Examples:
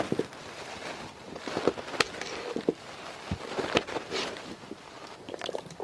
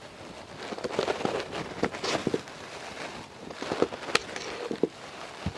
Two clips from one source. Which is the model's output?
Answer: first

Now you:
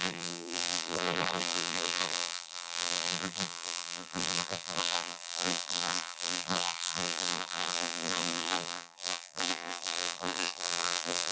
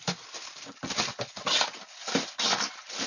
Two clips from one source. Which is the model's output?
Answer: first